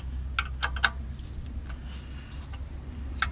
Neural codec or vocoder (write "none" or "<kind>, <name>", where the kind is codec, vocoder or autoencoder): none